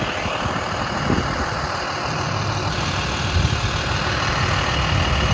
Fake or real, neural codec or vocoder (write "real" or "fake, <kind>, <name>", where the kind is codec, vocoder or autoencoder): real